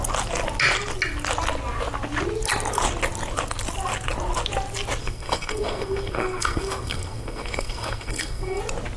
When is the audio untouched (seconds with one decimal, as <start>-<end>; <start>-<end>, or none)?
0.0-5.0; 8.6-9.0